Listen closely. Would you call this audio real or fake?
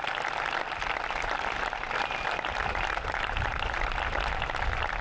real